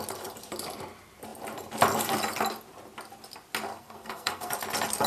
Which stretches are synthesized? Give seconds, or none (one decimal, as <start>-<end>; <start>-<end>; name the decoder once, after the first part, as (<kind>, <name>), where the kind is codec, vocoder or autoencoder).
3.7-4.5 (codec, SNAC)